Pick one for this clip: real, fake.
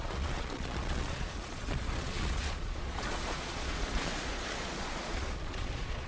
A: fake